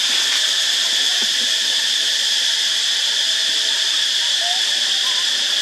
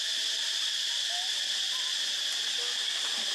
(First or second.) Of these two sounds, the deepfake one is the first